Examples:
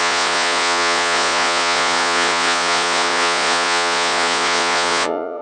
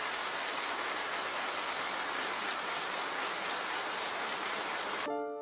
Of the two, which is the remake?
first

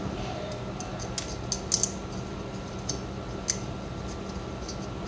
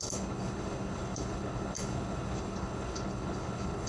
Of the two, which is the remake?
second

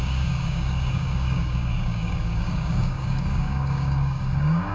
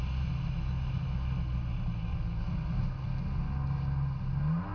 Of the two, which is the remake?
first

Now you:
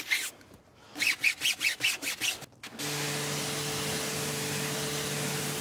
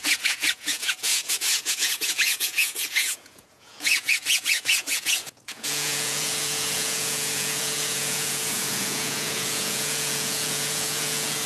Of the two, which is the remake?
second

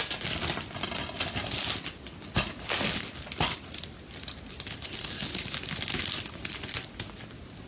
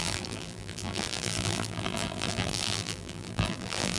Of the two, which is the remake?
second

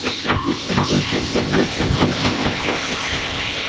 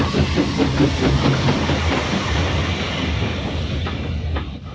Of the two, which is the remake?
first